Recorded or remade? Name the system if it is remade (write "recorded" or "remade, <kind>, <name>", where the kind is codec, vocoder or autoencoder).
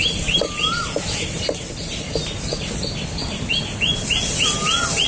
recorded